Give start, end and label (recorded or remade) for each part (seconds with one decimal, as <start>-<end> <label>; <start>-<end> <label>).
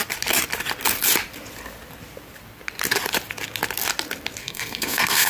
0.0-4.4 recorded; 4.4-5.3 remade